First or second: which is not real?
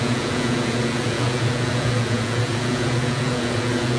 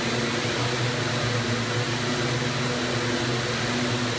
first